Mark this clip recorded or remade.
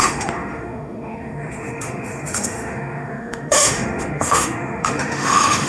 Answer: remade